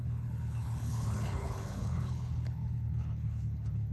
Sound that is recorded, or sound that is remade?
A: remade